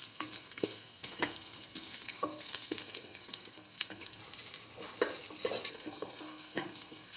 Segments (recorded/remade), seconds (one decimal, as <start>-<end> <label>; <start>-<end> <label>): 0.0-4.2 remade; 4.2-5.7 recorded; 5.7-7.2 remade